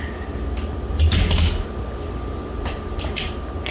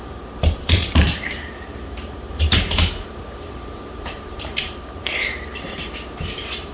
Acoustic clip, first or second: first